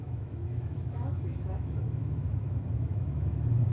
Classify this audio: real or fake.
fake